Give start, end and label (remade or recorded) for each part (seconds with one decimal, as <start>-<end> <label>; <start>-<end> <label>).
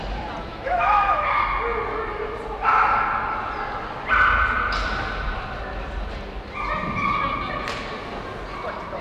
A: 0.0-0.5 recorded; 0.5-1.4 remade; 1.4-9.0 recorded